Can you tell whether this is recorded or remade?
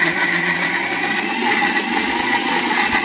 remade